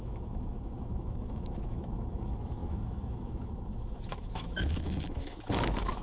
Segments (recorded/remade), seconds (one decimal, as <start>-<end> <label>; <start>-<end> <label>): 0.0-6.0 remade